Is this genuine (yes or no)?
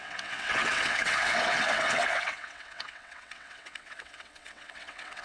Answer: no